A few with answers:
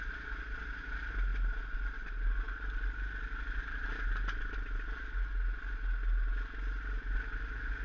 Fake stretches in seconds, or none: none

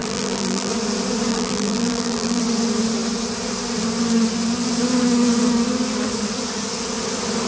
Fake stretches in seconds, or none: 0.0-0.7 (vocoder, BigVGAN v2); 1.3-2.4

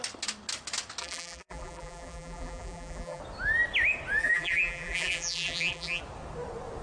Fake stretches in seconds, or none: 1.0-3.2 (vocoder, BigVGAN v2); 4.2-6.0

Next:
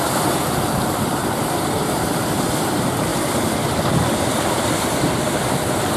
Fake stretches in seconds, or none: 0.0-1.2 (vocoder, BigVGAN v2); 1.8-3.1; 4.3-6.0

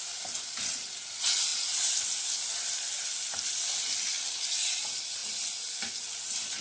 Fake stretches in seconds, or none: none